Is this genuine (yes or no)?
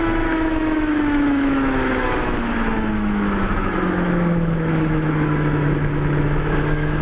no